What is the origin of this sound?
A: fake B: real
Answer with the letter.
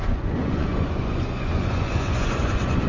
A